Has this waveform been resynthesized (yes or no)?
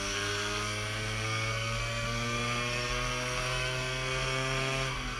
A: yes